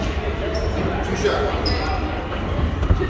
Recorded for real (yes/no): yes